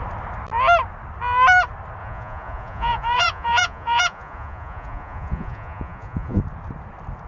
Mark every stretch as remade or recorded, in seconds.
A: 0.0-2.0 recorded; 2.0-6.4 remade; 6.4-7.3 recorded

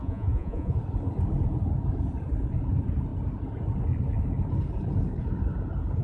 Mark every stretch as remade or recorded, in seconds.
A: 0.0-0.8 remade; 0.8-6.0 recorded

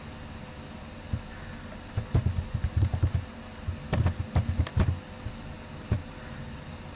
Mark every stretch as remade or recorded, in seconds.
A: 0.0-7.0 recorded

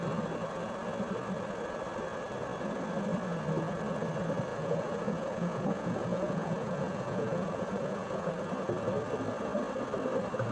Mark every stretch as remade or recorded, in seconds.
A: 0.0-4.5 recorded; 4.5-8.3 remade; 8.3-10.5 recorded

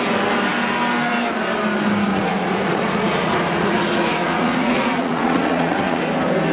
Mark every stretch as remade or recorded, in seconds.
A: 0.0-2.1 recorded; 2.1-6.0 remade; 6.0-6.5 recorded

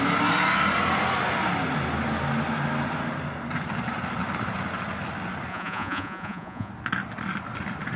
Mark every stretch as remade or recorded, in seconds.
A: 0.0-5.5 recorded; 5.5-6.7 remade; 6.7-8.0 recorded

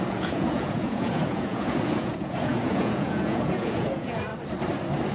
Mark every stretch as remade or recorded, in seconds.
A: 0.0-4.3 remade; 4.3-5.1 recorded